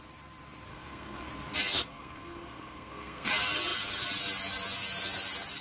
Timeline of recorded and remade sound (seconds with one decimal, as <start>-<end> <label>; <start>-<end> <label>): 0.0-0.7 recorded; 0.7-1.3 remade; 1.3-1.9 recorded; 1.9-3.3 remade; 3.3-5.6 recorded